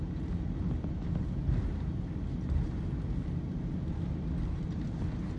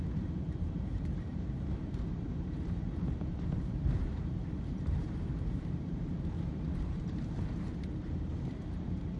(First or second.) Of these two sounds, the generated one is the second